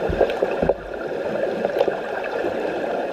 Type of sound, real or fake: fake